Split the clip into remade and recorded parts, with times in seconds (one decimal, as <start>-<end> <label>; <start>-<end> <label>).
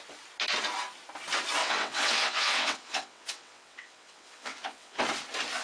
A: 0.0-1.6 recorded; 1.6-5.0 remade; 5.0-5.6 recorded